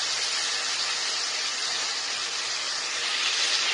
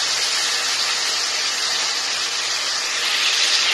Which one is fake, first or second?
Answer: first